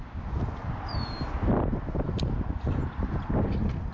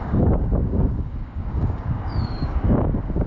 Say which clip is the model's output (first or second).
second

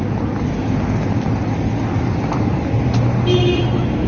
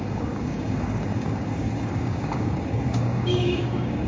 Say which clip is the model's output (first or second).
second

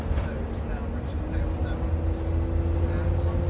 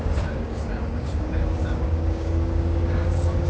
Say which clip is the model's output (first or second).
second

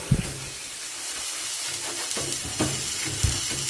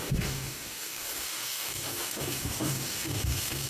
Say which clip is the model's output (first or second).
second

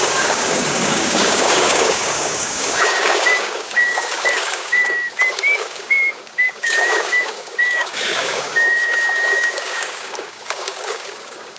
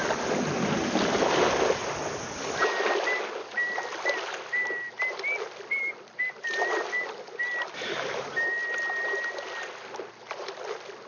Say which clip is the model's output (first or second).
first